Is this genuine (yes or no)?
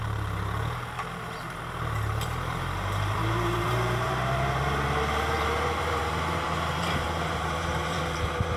no